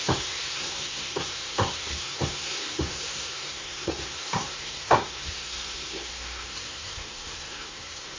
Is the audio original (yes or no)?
no